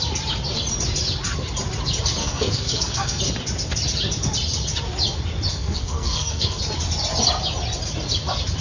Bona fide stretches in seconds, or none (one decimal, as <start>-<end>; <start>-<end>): 0.0-2.2; 3.2-5.5; 6.6-8.6